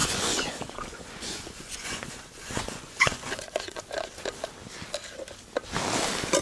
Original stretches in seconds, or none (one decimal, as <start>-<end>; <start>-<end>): 3.8-6.4